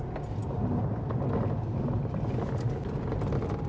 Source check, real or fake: real